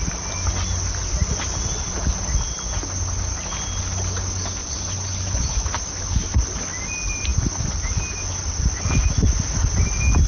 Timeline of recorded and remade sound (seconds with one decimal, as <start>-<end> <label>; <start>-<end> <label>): 0.0-4.6 recorded; 4.6-5.7 remade; 5.7-10.3 recorded